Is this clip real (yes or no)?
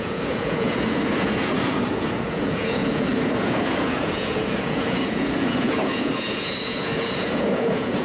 no